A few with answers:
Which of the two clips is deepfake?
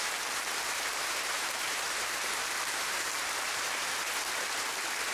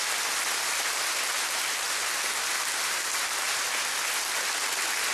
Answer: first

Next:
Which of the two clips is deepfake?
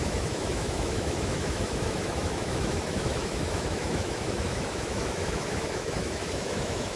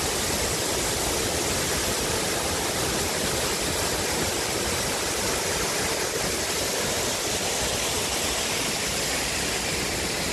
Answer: first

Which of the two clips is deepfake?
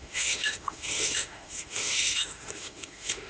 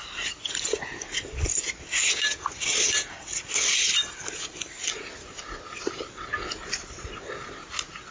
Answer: first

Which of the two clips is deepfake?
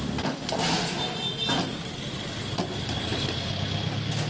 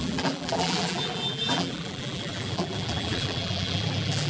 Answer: second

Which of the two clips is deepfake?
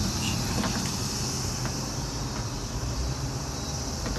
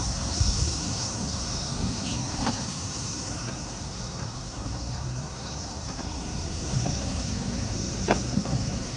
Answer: second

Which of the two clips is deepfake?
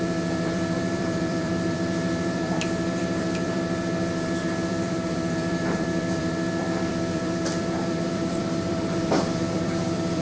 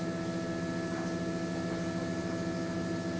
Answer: first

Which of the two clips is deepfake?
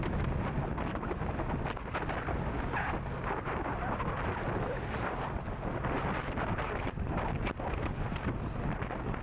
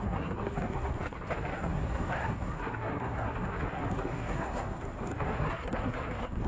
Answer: second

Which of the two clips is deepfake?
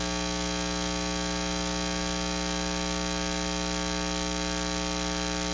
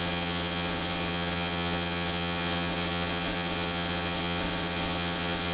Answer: second